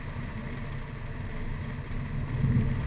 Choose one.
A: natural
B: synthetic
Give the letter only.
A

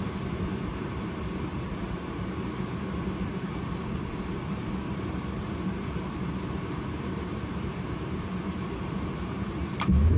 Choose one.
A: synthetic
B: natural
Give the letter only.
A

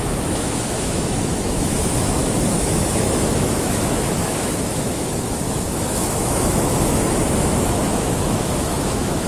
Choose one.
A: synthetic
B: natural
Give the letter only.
A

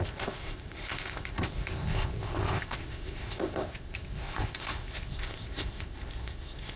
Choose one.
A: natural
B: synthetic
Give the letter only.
B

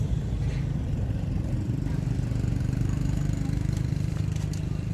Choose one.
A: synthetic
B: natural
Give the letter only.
A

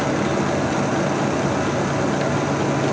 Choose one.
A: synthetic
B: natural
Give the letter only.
B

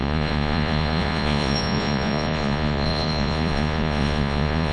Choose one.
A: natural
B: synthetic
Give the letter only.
B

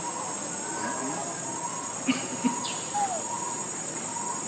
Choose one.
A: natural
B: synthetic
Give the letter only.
A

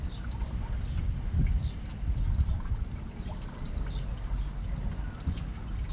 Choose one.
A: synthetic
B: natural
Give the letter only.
B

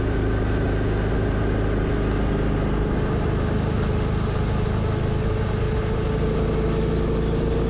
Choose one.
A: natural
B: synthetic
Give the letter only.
A